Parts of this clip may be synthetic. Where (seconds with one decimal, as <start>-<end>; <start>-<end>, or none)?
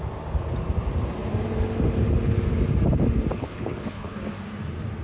3.4-4.2